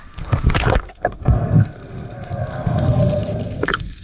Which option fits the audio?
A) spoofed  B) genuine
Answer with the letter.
A